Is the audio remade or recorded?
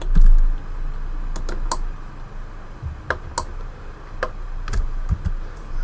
recorded